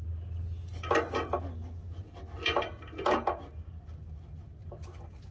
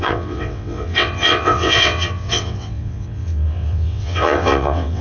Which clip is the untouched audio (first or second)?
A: first